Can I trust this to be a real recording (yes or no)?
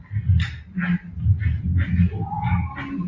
yes